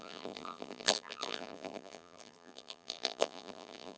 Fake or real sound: fake